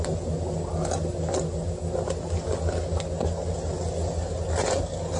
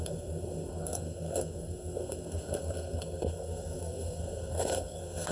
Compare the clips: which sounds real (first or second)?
first